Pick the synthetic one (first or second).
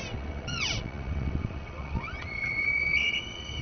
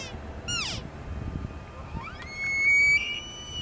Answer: first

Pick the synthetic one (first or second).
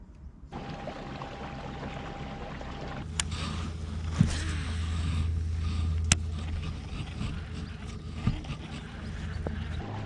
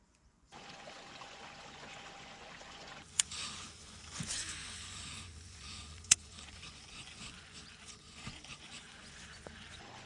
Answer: second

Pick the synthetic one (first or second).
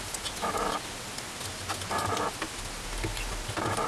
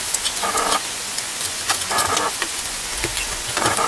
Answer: second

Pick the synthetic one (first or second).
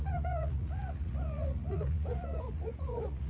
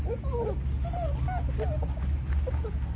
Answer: first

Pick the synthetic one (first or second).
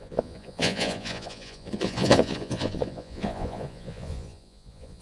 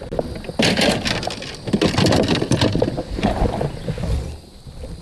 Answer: first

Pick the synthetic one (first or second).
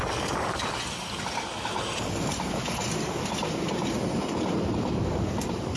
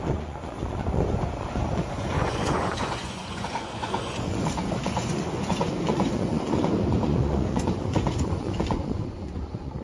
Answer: second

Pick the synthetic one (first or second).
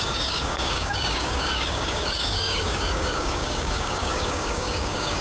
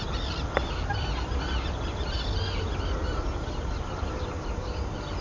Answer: first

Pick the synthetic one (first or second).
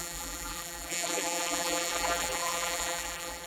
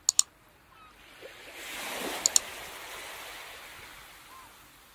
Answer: first